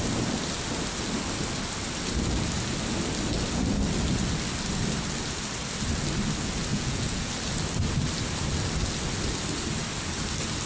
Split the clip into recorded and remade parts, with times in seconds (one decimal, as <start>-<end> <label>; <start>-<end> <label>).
0.0-6.7 recorded; 6.7-7.3 remade; 7.3-10.7 recorded